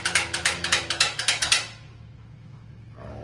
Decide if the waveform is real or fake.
fake